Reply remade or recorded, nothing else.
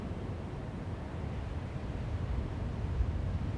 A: recorded